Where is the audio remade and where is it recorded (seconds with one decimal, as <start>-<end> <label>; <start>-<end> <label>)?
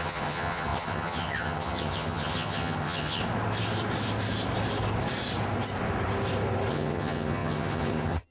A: 0.0-3.2 remade; 3.2-6.7 recorded; 6.7-8.3 remade